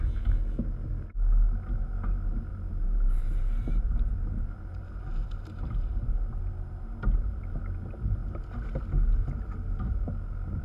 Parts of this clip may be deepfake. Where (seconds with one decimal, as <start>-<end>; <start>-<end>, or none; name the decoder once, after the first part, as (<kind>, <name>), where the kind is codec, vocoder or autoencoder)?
2.5-7.4 (vocoder, BigVGAN v2)